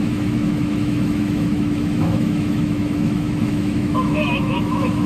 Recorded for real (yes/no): no